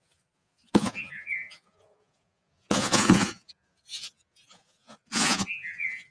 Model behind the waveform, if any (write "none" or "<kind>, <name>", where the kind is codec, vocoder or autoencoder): vocoder, Vocos